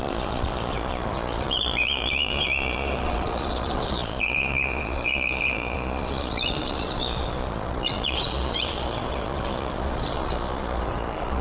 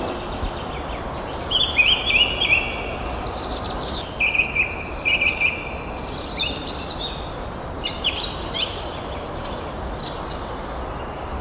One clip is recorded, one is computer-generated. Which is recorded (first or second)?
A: second